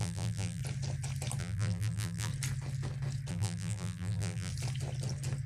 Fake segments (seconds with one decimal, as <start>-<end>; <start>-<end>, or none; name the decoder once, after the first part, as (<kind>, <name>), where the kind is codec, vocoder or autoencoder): 0.0-0.6 (vocoder, BigVGAN v2); 1.4-2.3; 3.3-4.5